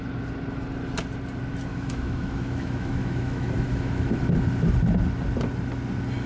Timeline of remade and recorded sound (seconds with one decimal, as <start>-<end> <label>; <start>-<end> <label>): 0.0-1.7 recorded; 1.7-4.2 remade; 4.2-6.3 recorded